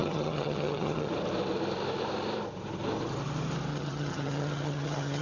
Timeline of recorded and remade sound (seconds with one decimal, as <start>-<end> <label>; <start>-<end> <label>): 0.0-1.1 remade; 1.1-3.7 recorded; 3.7-5.2 remade